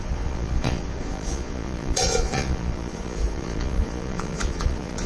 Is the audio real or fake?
fake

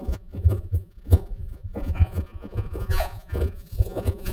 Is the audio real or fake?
fake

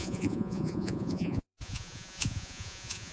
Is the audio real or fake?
fake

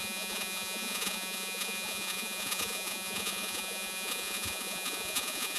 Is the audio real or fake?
fake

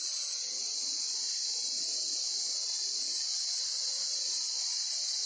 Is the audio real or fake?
real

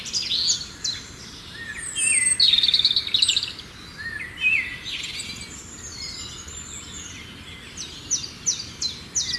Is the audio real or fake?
real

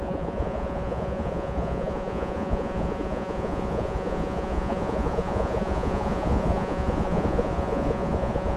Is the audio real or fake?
fake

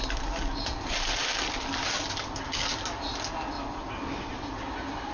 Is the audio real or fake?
real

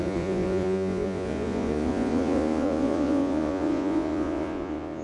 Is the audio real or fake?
fake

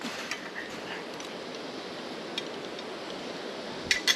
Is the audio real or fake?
real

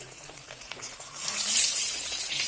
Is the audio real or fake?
fake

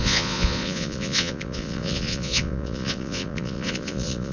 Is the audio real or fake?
fake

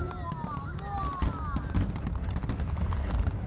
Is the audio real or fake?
real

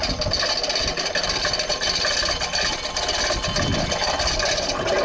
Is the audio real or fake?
real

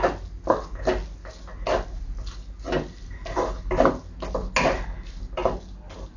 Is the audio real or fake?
real